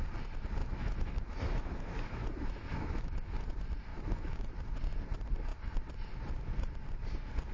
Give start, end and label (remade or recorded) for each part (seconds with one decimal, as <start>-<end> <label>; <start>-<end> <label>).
0.0-0.6 recorded; 0.6-3.5 remade; 3.5-3.9 recorded; 3.9-4.5 remade; 4.5-7.5 recorded